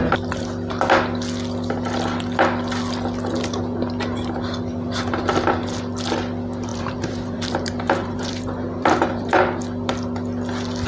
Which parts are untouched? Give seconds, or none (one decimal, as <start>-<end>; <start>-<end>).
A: 0.0-6.7; 9.6-10.9